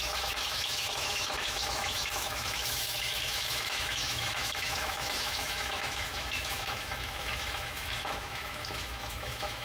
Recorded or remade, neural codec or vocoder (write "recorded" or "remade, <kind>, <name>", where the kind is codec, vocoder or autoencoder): remade, autoencoder, DAC-VAE